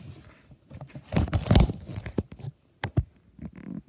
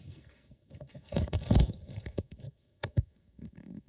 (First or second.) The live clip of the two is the first